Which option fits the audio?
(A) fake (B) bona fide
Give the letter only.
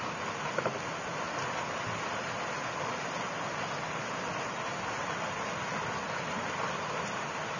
B